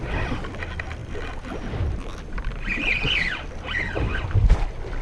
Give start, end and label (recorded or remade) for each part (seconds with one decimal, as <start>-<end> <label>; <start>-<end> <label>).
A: 0.0-5.0 recorded